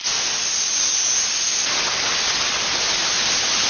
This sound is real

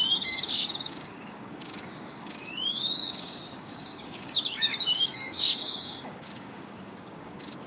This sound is fake